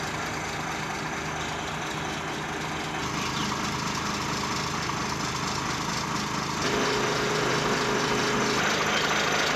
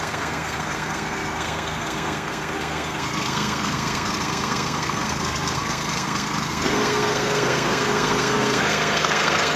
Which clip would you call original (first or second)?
first